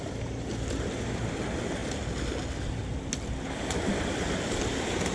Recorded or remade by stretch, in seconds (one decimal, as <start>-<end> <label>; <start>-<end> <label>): 0.0-5.1 recorded